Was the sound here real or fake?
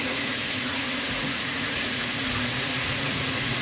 fake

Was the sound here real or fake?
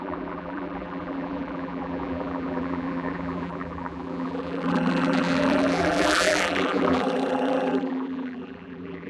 fake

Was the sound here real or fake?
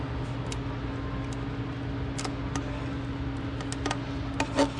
real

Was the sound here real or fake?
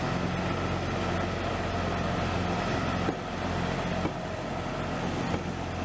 real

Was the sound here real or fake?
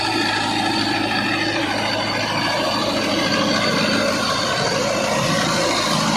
fake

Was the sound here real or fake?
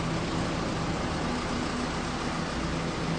real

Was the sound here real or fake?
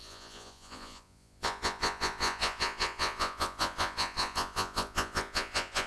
fake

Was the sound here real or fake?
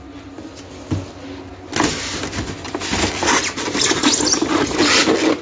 real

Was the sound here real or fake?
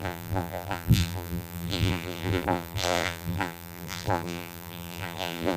fake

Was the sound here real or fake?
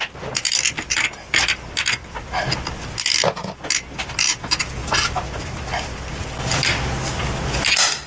real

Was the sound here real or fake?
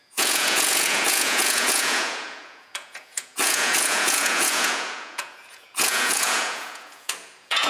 fake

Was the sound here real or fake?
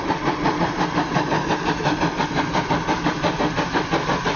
real